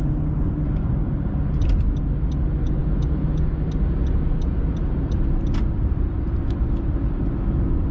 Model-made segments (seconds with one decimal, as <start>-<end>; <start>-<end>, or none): 2.8-3.5